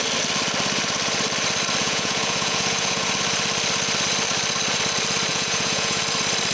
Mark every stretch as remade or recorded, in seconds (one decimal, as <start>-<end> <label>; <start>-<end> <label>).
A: 0.0-1.8 recorded; 1.8-3.1 remade; 3.1-5.3 recorded; 5.3-6.0 remade; 6.0-6.5 recorded